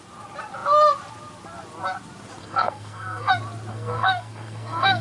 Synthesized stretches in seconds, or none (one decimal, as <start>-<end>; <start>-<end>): 2.4-3.3; 3.7-5.0